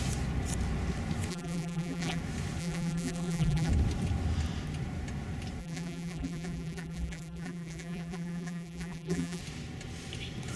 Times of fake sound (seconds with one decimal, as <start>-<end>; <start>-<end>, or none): 1.3-2.2; 2.6-3.7; 5.6-9.4